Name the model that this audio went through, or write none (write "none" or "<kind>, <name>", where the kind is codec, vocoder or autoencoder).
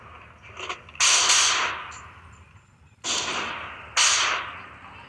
none